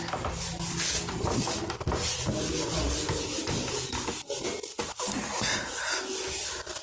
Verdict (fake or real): real